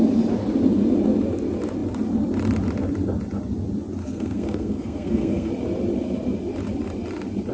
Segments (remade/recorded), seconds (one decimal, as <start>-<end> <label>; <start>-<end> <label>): 0.0-4.0 recorded; 4.0-5.5 remade; 5.5-7.5 recorded